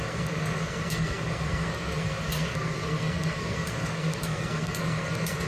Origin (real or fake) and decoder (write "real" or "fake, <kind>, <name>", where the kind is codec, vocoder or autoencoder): fake, codec, SNAC